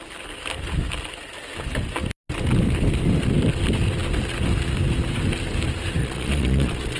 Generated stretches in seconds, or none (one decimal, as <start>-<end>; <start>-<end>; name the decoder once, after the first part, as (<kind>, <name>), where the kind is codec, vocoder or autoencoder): 6.0-7.0 (vocoder, Vocos)

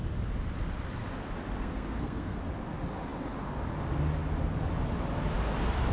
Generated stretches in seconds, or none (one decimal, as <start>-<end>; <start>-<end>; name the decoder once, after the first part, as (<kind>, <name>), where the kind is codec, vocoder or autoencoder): 1.6-2.4 (codec, SNAC)